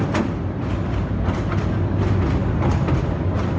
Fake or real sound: real